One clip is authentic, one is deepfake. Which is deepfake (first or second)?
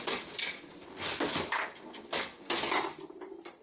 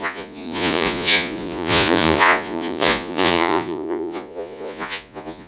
second